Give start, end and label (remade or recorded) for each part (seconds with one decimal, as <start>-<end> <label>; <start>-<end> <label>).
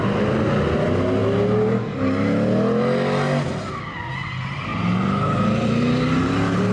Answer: 0.0-6.7 recorded